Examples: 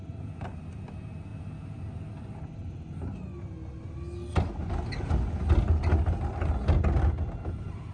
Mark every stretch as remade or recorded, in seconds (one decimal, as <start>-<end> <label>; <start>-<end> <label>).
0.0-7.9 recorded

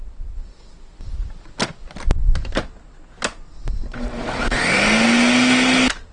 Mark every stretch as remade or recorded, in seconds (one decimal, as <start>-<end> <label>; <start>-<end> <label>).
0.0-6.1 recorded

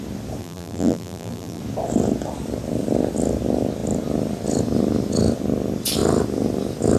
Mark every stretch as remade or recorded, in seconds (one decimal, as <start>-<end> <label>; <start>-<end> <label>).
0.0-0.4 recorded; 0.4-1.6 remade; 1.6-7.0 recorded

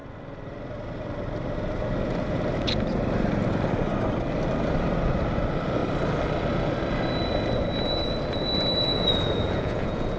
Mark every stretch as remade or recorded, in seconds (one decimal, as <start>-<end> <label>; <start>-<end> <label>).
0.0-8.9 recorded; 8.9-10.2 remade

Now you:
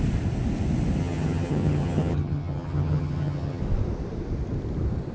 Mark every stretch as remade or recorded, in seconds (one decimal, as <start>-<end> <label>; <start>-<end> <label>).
0.0-1.0 recorded; 1.0-3.6 remade; 3.6-5.1 recorded

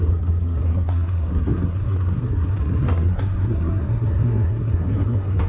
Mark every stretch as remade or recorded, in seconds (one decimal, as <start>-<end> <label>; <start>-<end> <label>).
0.0-5.5 remade

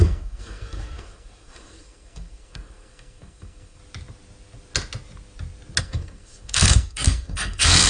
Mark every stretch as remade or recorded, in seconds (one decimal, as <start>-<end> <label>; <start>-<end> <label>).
0.0-3.8 remade; 3.8-5.8 recorded; 5.8-7.9 remade